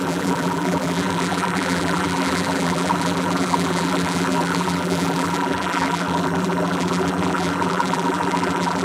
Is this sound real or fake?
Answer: fake